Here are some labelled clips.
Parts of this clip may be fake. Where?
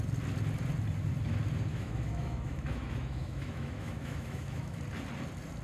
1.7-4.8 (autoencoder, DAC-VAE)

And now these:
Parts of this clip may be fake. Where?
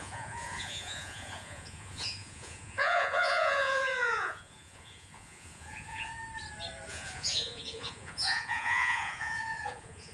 0.0-6.1 (vocoder, Vocos); 6.9-10.1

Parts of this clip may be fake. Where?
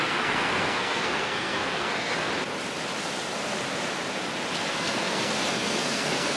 0.0-2.3 (codec, SNAC); 4.7-6.4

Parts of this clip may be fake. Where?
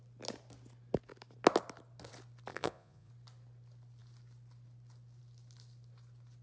2.5-3.1 (vocoder, Vocos)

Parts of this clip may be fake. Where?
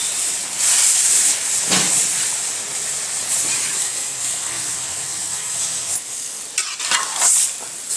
3.8-6.4 (codec, SNAC)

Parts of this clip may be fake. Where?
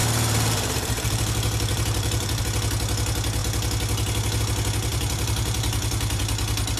0.0-2.4 (vocoder, BigVGAN v2); 4.9-6.2